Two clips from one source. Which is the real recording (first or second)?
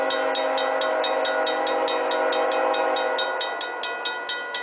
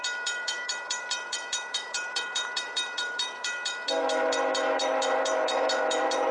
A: first